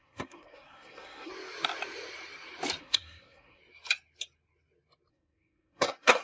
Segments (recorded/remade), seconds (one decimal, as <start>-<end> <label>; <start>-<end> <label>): 0.0-1.3 remade; 1.3-2.8 recorded; 2.8-3.6 remade; 3.6-5.1 recorded; 5.1-6.2 remade